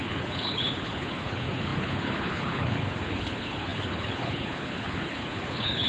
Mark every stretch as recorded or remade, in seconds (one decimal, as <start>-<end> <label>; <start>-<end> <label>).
0.0-5.9 remade